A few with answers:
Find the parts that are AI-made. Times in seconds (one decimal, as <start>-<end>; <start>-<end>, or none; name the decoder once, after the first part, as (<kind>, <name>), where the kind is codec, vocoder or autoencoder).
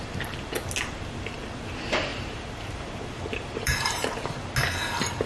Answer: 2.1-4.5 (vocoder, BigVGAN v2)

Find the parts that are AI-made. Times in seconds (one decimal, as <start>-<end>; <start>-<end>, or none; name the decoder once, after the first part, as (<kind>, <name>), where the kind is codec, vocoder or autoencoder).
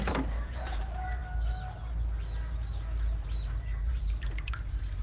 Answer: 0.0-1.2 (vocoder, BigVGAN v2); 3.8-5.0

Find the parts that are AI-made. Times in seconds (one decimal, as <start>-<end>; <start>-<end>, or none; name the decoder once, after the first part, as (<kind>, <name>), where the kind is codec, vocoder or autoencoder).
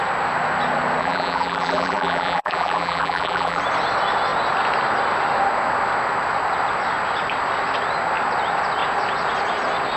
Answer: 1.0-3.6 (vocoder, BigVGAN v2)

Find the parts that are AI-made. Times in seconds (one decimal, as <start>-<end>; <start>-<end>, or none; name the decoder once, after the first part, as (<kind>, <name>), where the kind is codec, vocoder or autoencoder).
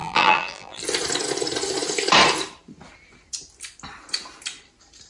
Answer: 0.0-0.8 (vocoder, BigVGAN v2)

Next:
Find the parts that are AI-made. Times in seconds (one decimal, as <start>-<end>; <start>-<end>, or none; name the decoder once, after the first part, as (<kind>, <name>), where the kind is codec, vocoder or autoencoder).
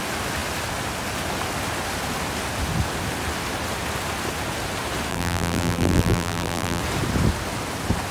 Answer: 5.1-6.8 (vocoder, BigVGAN v2)